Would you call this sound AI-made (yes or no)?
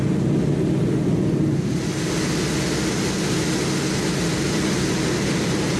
no